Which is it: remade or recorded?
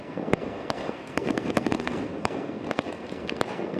remade